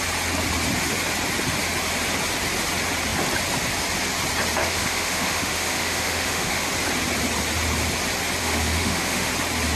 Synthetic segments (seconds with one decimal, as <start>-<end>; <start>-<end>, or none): 4.6-6.7; 8.4-9.3